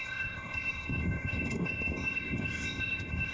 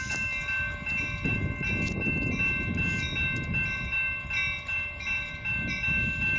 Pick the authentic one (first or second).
second